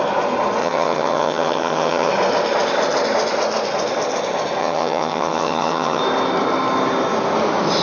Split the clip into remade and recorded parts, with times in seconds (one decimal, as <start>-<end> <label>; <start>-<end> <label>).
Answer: 0.0-0.6 recorded; 0.6-2.1 remade; 2.1-4.6 recorded; 4.6-6.0 remade; 6.0-7.8 recorded